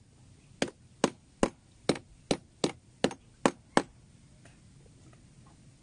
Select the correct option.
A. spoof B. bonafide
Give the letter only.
B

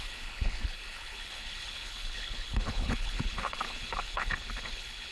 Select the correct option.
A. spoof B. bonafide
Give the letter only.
A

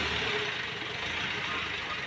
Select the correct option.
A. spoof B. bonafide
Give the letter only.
B